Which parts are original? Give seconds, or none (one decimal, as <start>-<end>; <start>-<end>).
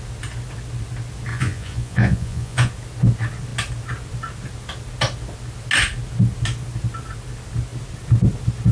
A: 0.0-1.3; 2.7-8.7